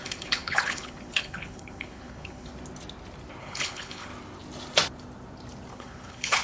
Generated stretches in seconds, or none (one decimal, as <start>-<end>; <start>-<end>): 0.0-2.5; 3.4-4.1; 5.7-6.4